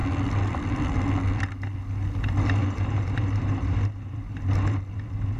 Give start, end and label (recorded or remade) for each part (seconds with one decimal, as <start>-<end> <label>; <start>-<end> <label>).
0.0-2.6 recorded; 2.6-4.4 remade; 4.4-5.4 recorded